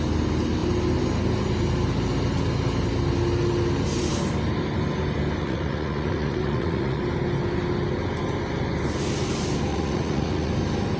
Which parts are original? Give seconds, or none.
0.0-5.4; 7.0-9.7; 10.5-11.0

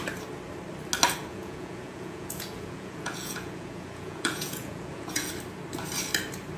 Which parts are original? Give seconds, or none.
0.0-1.3; 5.3-6.6